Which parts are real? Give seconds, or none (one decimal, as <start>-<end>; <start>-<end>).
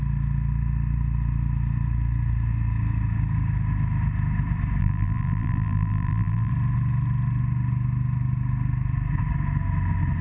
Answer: 0.0-4.8; 6.5-10.2